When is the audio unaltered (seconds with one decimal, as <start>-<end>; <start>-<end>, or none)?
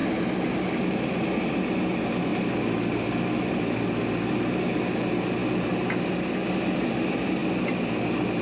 0.0-8.4